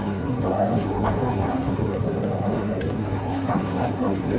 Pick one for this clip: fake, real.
fake